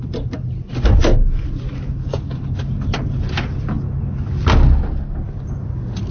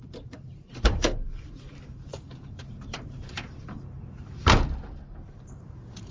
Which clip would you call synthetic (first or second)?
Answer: second